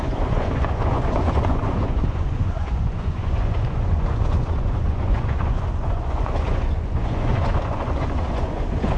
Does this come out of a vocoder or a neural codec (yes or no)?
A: yes